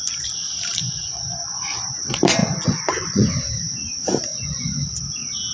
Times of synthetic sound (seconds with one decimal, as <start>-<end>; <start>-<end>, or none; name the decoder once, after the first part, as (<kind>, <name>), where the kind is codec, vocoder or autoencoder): 0.8-1.6 (vocoder, Vocos); 2.4-3.4; 4.3-5.1